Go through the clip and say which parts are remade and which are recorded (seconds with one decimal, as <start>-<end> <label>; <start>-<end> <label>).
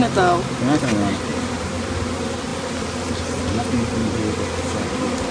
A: 0.0-1.3 recorded; 1.3-2.0 remade; 2.0-5.3 recorded